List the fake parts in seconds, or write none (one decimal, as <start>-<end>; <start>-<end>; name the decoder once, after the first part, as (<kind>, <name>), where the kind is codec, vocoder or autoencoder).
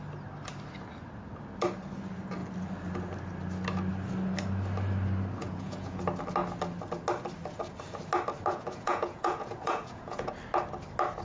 5.4-6.0 (vocoder, Vocos); 8.5-10.3